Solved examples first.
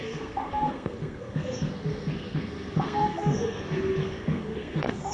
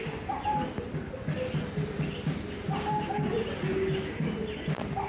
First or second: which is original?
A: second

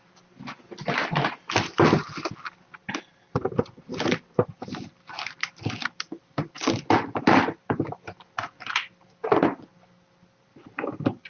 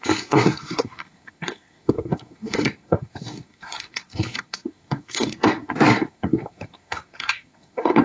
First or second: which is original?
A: first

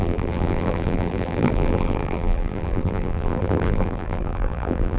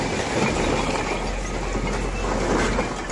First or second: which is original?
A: second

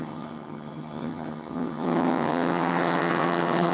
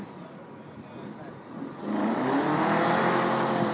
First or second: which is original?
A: second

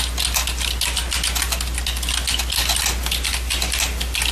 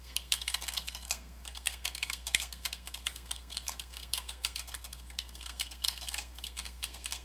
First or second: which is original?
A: first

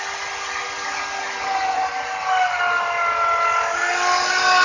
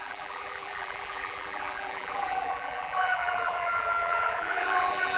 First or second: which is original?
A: first